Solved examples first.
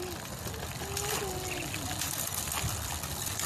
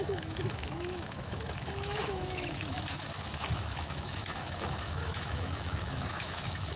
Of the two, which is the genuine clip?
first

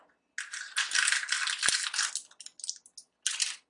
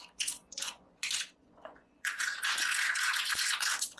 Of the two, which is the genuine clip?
first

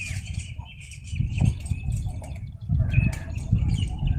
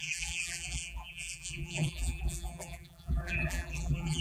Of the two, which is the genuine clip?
first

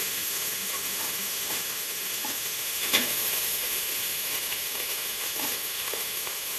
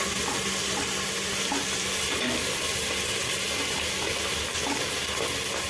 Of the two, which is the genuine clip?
second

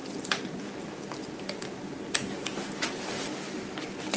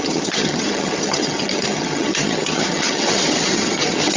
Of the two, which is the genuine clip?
first